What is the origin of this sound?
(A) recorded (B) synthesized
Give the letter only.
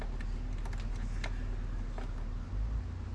A